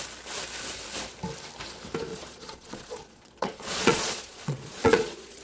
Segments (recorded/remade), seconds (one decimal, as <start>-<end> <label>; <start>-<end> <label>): 0.0-2.1 recorded; 2.1-5.4 remade